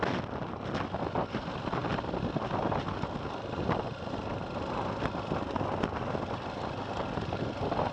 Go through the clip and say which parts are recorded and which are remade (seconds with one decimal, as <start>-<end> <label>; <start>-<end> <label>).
0.0-7.9 recorded